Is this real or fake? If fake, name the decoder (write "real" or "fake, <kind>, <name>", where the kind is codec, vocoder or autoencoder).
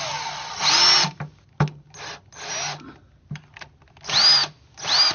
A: real